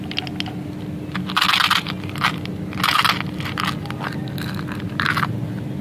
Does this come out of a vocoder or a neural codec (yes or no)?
no